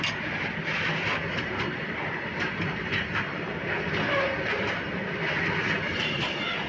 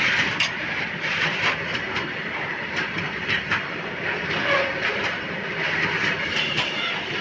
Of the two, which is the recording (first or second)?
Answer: first